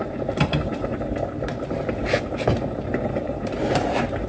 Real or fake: fake